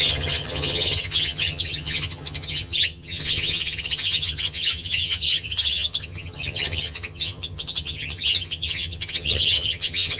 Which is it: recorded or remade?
remade